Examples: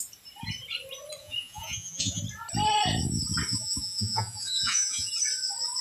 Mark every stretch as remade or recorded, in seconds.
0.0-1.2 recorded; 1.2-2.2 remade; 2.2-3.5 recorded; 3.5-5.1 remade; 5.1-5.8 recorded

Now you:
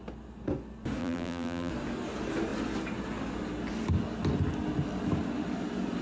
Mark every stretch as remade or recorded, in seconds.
0.0-1.0 recorded; 1.0-1.7 remade; 1.7-6.0 recorded

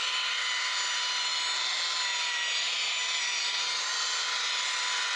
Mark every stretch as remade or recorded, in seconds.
0.0-1.3 remade; 1.3-4.4 recorded; 4.4-5.2 remade

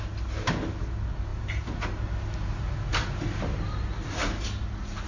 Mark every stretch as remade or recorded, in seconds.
0.0-5.1 recorded